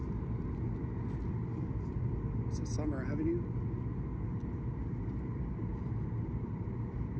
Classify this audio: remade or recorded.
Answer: recorded